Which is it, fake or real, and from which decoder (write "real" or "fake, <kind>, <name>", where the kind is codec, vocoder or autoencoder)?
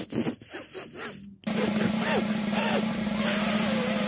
real